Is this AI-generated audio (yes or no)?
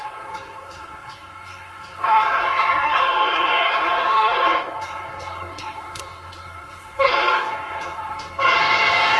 yes